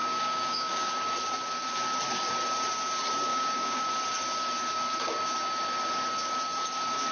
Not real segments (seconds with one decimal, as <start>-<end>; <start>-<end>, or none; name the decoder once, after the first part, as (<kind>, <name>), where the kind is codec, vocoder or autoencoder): 0.0-0.9 (codec, DAC); 3.3-3.8